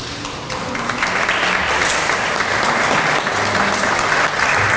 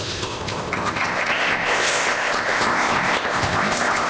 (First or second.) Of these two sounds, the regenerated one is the second